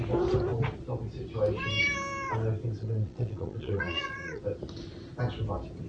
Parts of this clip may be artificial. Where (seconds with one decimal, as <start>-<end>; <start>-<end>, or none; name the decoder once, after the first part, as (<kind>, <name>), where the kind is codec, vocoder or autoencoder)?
2.8-4.4 (vocoder, Vocos)